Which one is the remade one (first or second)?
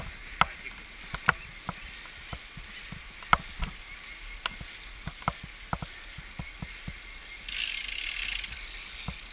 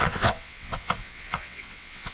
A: second